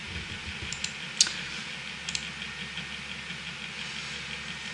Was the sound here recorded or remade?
recorded